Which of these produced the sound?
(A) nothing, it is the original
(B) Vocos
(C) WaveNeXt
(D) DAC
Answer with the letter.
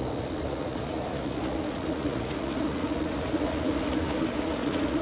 B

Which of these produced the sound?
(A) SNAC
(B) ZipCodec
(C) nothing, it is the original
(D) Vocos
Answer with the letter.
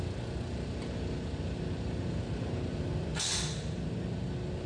C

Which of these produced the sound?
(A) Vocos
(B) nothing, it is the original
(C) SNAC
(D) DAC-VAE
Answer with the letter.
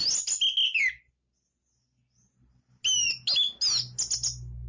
B